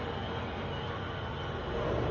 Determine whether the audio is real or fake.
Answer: real